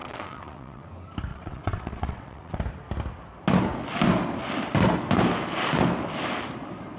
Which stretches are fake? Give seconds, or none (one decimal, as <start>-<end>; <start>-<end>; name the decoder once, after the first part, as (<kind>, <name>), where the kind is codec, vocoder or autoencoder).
0.0-0.9 (vocoder, WaveNeXt); 1.3-2.6